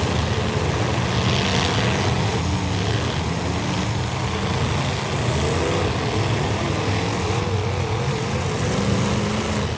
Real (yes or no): yes